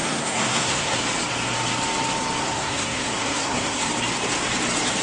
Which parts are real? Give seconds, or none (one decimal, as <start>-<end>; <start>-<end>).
1.0-2.4; 3.9-5.0